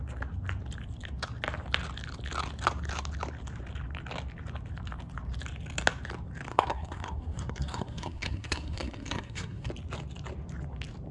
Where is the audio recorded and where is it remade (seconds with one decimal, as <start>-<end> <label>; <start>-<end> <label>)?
0.0-6.5 recorded; 6.5-9.7 remade; 9.7-11.1 recorded

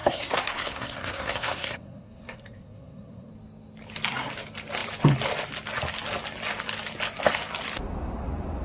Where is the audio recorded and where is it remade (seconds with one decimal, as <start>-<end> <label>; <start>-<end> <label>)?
0.0-3.3 remade; 3.3-8.6 recorded

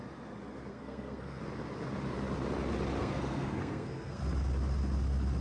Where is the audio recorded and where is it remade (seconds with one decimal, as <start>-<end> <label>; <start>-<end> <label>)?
0.0-0.7 recorded; 0.7-1.4 remade; 1.4-3.0 recorded; 3.0-4.2 remade; 4.2-5.4 recorded

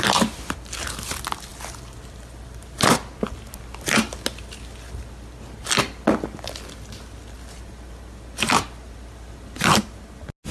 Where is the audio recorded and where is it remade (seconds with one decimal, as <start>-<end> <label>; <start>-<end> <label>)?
0.0-10.5 recorded

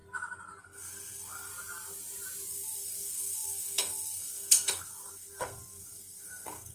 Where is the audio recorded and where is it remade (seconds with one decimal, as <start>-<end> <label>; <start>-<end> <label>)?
0.0-0.6 recorded; 0.6-1.5 remade; 1.5-2.5 recorded; 2.5-6.7 remade

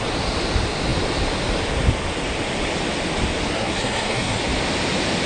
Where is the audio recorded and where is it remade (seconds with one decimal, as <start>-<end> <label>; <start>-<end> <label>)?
0.0-3.5 recorded; 3.5-4.4 remade; 4.4-5.3 recorded

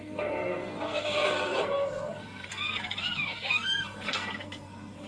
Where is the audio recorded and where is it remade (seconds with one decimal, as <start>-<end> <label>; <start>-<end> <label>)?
0.0-5.1 remade